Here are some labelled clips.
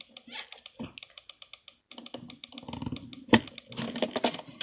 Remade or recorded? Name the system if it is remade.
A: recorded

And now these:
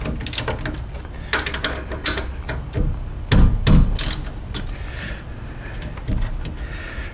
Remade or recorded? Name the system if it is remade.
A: recorded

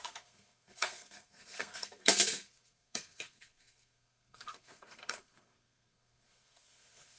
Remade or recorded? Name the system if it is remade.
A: remade, codec, SNAC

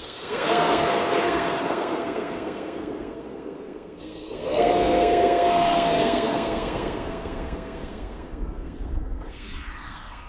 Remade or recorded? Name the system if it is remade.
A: remade, codec, SNAC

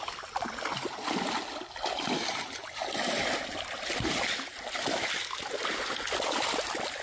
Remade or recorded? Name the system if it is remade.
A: recorded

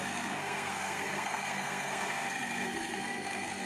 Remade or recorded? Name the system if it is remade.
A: remade, codec, SNAC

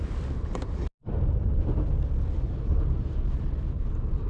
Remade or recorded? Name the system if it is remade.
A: recorded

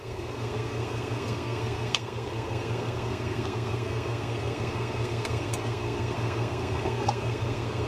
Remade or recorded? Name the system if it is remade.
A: remade, codec, SNAC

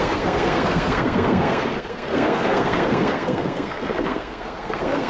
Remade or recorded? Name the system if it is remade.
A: remade, codec, SNAC